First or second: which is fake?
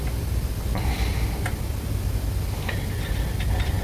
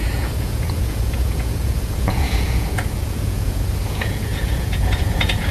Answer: second